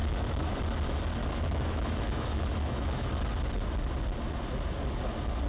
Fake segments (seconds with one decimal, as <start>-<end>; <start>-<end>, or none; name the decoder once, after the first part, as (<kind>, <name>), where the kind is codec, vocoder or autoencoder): 0.0-0.6 (autoencoder, DAC-VAE); 1.2-3.1